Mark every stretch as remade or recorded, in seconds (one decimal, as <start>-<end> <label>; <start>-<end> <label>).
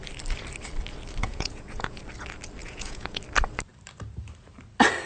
0.0-1.2 recorded; 1.2-2.0 remade; 2.0-2.6 recorded; 2.6-3.2 remade; 3.2-5.1 recorded